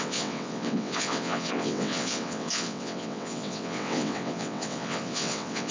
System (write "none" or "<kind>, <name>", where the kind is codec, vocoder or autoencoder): vocoder, WaveNeXt